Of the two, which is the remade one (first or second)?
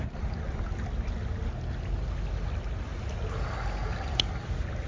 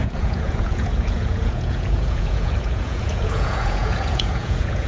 second